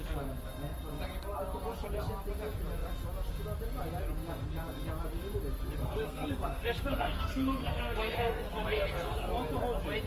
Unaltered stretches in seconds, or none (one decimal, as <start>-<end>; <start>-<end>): 0.0-5.8; 9.3-10.1